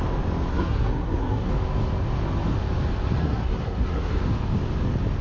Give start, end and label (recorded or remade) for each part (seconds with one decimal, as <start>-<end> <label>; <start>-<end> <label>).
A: 0.0-0.5 recorded; 0.5-1.5 remade; 1.5-3.2 recorded; 3.2-4.2 remade; 4.2-5.2 recorded

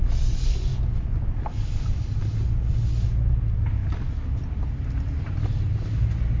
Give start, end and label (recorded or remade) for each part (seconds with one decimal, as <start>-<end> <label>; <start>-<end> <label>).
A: 0.0-6.4 recorded